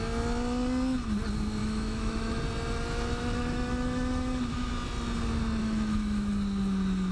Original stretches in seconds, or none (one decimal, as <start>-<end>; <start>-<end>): 0.0-1.6; 2.4-3.1; 4.7-5.6; 6.3-7.1